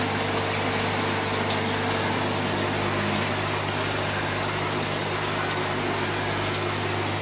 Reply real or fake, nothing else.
real